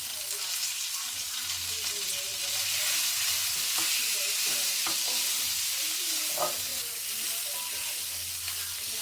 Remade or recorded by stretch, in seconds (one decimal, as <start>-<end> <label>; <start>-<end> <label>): 0.0-9.0 recorded